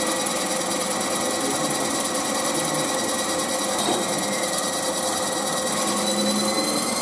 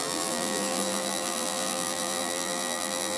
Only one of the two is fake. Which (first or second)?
second